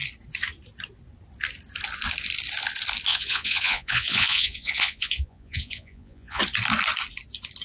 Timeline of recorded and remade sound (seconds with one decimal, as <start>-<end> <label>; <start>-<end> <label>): 0.0-3.1 recorded; 3.1-6.4 remade; 6.4-7.6 recorded